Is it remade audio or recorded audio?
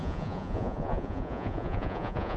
remade